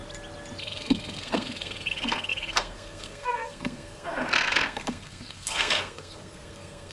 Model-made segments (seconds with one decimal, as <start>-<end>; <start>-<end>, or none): 0.6-6.9

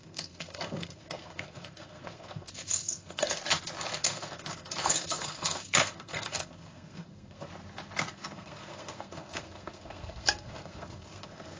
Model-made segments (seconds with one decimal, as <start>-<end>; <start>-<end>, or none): 0.0-3.4; 4.0-7.5; 8.1-11.6

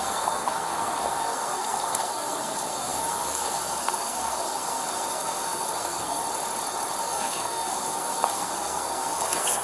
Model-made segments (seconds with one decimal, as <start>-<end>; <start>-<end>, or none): 0.0-6.2; 7.0-9.6